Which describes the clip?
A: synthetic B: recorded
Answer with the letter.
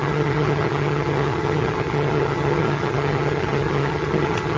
A